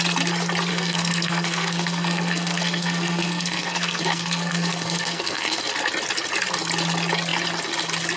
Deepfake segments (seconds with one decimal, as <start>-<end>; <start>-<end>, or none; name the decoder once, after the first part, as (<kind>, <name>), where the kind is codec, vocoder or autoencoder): 0.7-5.6 (codec, SNAC)